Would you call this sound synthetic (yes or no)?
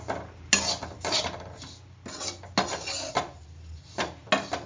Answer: no